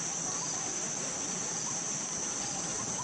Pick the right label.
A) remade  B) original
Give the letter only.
B